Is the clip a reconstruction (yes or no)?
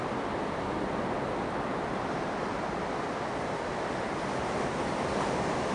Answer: no